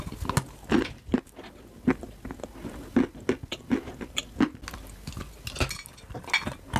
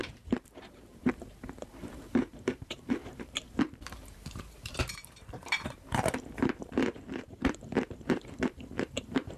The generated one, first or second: second